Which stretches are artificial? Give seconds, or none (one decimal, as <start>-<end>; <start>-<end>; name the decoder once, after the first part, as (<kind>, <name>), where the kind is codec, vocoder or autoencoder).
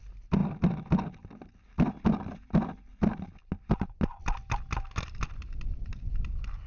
none